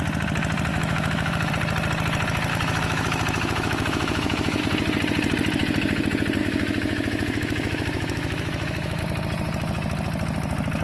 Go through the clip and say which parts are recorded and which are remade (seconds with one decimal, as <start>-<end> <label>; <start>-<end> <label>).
0.0-0.7 recorded; 0.7-1.5 remade; 1.5-2.5 recorded; 2.5-4.6 remade; 4.6-6.4 recorded; 6.4-9.0 remade; 9.0-10.8 recorded